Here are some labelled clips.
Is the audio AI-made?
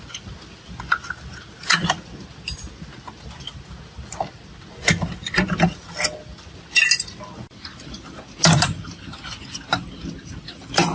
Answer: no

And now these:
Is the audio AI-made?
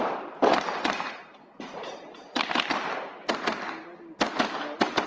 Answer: no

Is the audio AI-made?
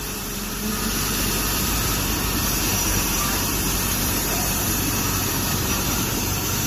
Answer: yes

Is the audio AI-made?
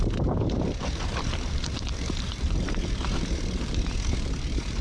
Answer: yes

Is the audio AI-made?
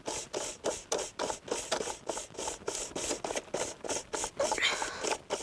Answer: no